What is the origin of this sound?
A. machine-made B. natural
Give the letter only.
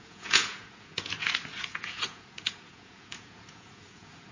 A